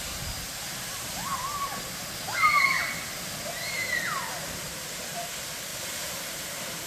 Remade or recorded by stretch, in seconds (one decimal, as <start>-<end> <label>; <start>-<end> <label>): 0.0-6.9 recorded